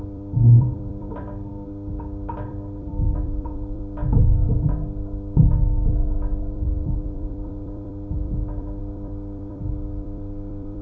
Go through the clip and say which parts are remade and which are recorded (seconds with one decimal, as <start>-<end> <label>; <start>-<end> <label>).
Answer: 0.0-1.5 remade; 1.5-2.3 recorded; 2.3-4.0 remade; 4.0-6.4 recorded; 6.4-10.8 remade